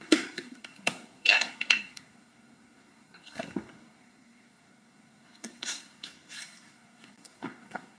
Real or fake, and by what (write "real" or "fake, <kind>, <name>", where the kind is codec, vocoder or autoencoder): fake, codec, SNAC